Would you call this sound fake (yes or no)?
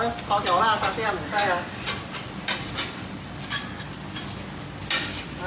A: no